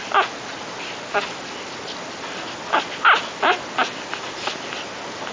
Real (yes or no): yes